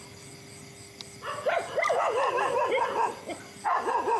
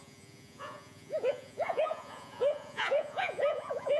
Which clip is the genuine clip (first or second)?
first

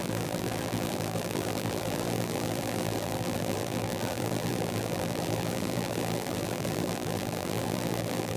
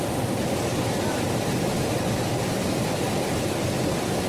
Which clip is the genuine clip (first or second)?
second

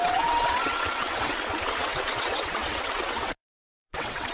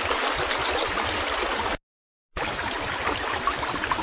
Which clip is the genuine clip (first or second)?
second